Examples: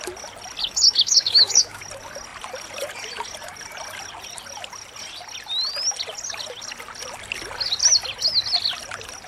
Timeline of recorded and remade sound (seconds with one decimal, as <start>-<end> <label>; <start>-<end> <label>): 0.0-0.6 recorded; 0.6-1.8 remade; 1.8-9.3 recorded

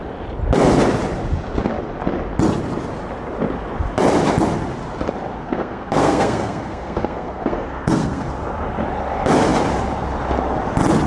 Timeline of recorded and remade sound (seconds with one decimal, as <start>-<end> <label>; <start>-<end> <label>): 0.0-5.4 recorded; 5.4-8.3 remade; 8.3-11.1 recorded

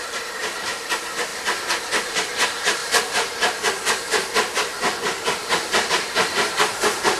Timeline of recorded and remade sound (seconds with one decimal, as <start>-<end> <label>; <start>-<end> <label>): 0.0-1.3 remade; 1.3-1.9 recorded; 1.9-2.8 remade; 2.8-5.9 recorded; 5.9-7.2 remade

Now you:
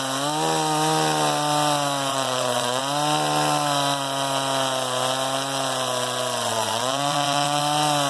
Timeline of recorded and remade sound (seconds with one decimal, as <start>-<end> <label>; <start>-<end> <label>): 0.0-2.1 recorded; 2.1-2.8 remade; 2.8-6.5 recorded; 6.5-7.6 remade; 7.6-8.1 recorded

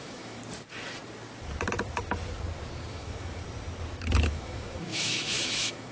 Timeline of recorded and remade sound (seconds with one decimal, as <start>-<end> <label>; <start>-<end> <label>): 0.0-0.4 remade; 0.4-2.9 recorded; 2.9-3.4 remade; 3.4-4.3 recorded; 4.3-5.9 remade

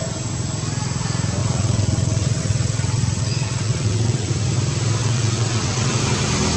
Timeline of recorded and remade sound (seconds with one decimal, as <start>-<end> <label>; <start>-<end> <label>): 0.0-1.4 recorded; 1.4-4.3 remade; 4.3-5.0 recorded; 5.0-6.0 remade; 6.0-6.6 recorded